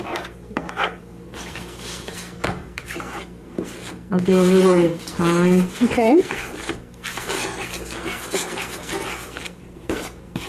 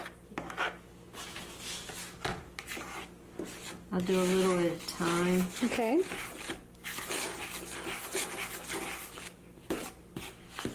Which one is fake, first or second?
first